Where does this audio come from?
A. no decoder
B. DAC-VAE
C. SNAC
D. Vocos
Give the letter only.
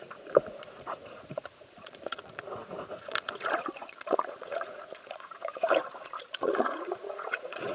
D